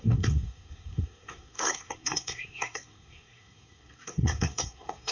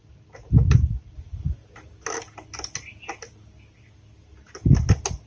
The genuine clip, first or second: second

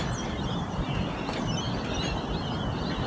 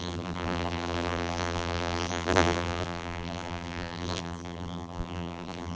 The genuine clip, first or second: first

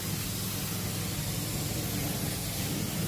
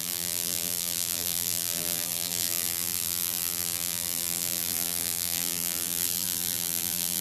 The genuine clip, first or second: first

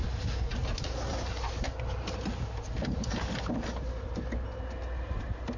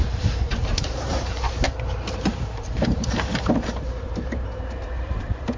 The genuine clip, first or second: first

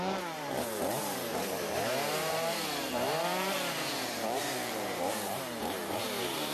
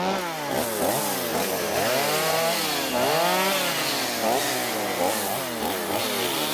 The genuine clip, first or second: second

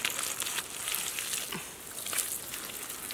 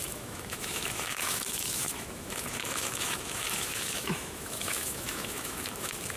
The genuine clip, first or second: first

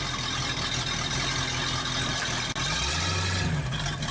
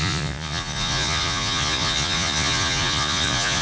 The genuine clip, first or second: first